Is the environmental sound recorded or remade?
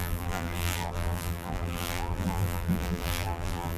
remade